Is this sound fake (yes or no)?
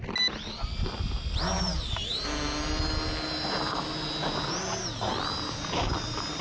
no